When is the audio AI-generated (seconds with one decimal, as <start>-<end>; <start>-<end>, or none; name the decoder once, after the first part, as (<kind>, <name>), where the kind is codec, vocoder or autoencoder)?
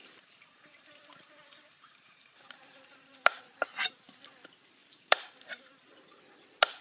0.0-3.4 (vocoder, BigVGAN v2); 4.8-6.2